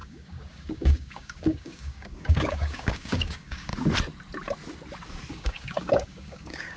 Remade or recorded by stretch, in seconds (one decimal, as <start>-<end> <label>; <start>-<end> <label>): 0.0-3.7 remade; 3.7-5.3 recorded; 5.3-6.8 remade